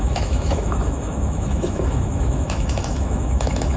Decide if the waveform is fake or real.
fake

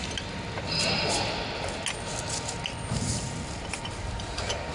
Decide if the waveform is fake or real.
real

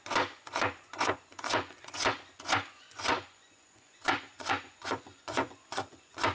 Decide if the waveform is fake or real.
fake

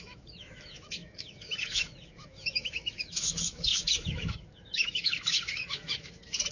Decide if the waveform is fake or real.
fake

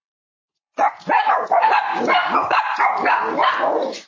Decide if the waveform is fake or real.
fake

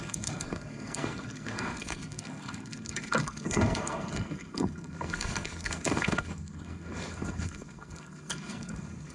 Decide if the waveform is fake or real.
fake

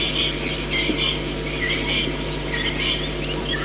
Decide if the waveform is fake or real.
real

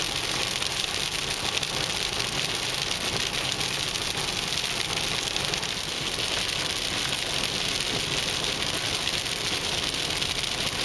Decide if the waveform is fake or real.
real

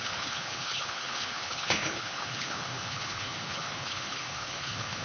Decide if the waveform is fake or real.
fake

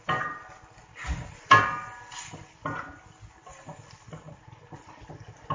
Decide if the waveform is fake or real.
real